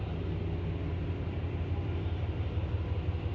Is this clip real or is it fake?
real